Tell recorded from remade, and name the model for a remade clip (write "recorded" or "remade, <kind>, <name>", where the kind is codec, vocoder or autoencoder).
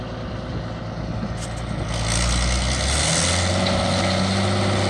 recorded